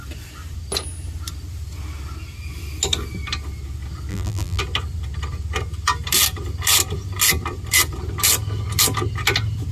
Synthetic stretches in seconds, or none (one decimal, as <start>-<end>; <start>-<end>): 4.1-4.6